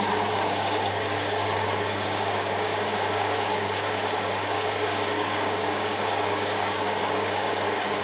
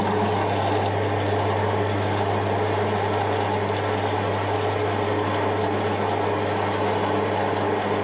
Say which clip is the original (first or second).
second